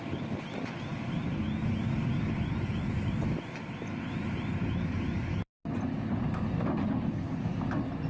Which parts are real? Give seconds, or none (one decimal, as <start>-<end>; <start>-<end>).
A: 0.0-0.9; 3.8-8.1